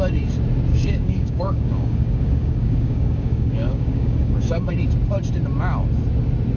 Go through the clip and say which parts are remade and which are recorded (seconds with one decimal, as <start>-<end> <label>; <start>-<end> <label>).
0.0-0.7 recorded; 0.7-4.7 remade; 4.7-6.6 recorded